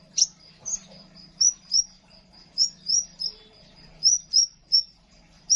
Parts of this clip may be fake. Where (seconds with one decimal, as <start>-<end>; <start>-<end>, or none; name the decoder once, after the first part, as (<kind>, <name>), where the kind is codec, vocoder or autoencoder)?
0.0-5.6 (vocoder, BigVGAN v2)